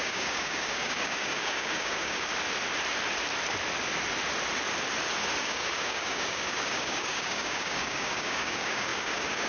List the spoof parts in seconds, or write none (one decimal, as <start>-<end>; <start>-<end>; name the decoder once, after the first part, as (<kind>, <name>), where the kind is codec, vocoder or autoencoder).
0.0-2.3 (codec, DAC); 5.4-9.5